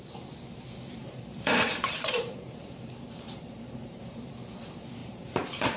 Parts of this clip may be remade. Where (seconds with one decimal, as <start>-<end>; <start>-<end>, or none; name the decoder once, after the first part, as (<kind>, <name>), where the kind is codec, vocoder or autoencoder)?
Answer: 1.0-4.3 (vocoder, BigVGAN v2); 5.0-5.8